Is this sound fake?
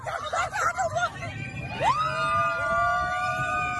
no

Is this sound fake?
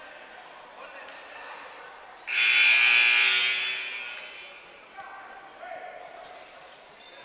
no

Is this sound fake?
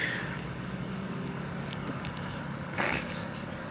yes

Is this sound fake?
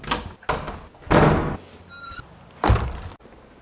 no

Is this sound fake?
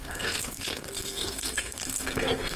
yes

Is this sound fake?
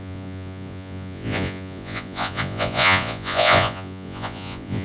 yes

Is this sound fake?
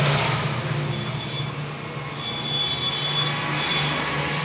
no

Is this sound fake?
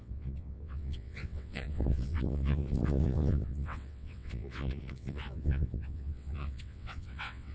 yes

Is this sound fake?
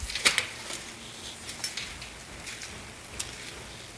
no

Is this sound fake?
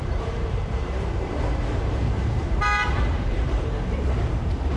yes